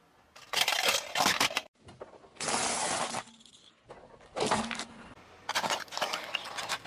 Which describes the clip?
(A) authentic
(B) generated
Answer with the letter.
A